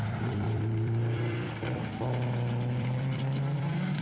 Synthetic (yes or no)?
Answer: yes